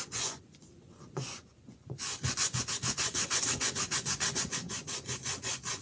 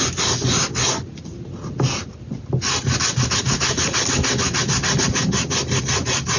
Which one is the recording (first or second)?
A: second